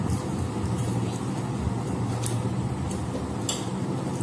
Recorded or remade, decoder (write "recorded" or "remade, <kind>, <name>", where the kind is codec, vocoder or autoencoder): recorded